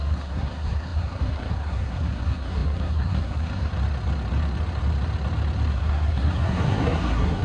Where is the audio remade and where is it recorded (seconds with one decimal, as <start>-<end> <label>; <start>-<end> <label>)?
0.0-3.7 remade; 3.7-5.7 recorded; 5.7-7.4 remade